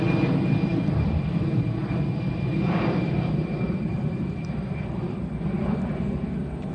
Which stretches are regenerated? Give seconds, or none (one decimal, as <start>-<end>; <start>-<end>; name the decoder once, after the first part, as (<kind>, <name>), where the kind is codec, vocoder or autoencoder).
1.8-5.7 (vocoder, BigVGAN v2)